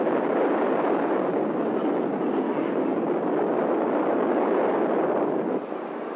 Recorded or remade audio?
recorded